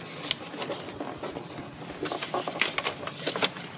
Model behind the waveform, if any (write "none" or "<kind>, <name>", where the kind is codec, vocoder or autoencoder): none